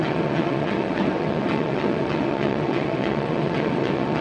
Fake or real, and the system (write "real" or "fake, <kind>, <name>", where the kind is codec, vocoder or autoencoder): fake, vocoder, WaveNeXt